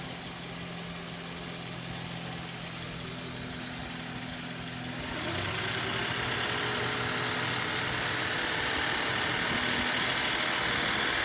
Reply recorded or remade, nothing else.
recorded